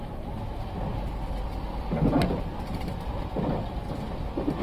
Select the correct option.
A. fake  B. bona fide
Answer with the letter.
B